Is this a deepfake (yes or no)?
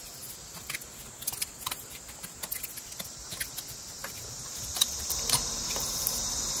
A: no